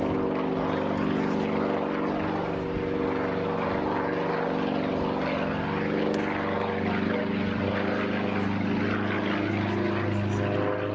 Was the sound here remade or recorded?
recorded